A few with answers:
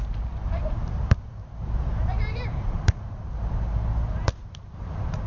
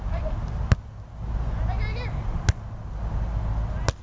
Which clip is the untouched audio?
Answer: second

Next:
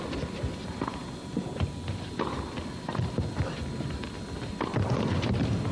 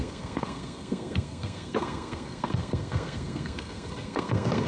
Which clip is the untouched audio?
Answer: first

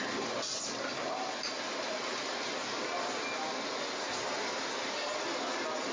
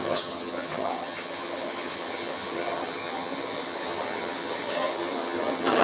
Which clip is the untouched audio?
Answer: first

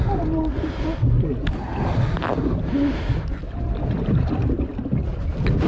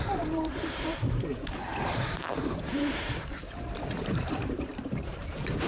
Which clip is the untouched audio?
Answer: first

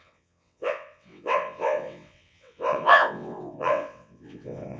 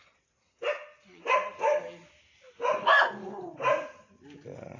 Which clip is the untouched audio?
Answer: second